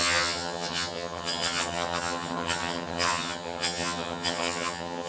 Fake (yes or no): yes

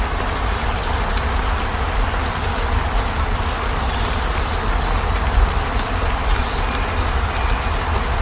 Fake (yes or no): no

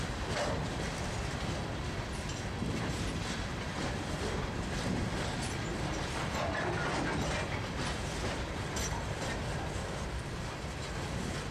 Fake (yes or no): no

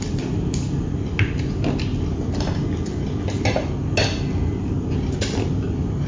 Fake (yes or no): no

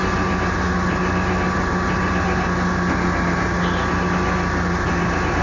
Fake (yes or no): no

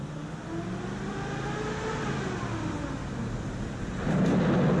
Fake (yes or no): no